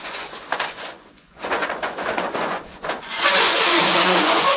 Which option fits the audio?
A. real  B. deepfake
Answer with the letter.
B